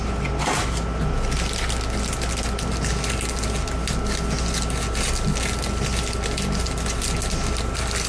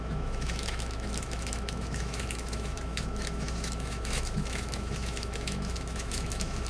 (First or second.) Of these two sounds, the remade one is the second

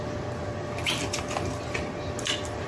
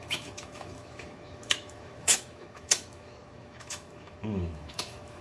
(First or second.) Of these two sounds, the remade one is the second